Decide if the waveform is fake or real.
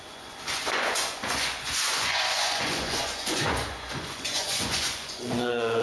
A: fake